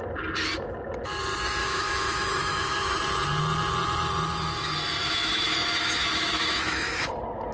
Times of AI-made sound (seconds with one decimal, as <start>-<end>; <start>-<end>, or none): 1.6-3.0; 5.0-7.1